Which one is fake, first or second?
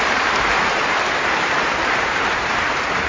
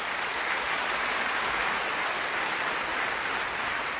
first